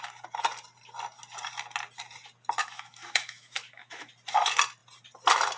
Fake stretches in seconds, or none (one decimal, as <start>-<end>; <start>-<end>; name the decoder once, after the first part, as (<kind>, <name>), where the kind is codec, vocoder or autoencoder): 2.6-4.1 (autoencoder, DAC-VAE)